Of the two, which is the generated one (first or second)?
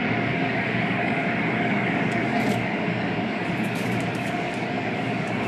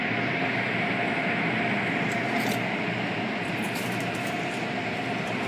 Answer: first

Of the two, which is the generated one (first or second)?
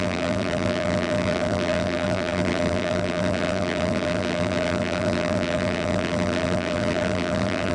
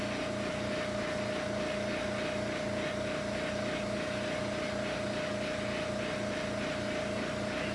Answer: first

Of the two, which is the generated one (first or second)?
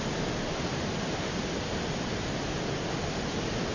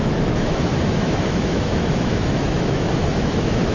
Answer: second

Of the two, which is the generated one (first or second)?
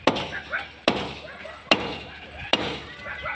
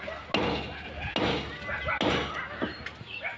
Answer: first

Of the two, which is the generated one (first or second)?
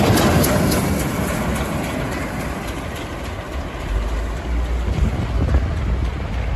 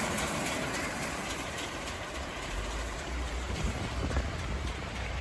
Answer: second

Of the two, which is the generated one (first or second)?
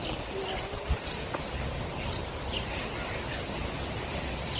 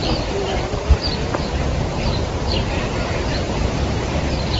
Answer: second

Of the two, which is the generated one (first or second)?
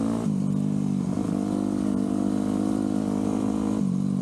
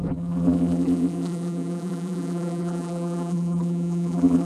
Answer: second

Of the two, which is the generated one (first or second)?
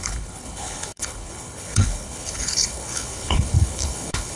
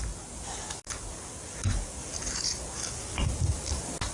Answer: first